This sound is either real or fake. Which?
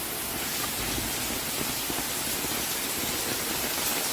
real